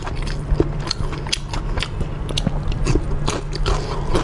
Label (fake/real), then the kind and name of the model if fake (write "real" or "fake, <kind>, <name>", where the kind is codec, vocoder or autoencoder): real